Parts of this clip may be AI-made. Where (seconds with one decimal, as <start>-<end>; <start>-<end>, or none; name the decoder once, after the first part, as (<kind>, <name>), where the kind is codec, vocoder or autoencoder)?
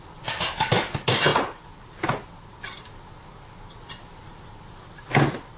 none